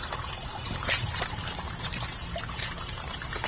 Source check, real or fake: fake